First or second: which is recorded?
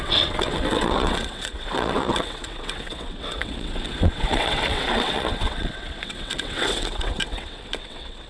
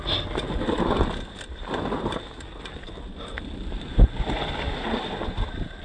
second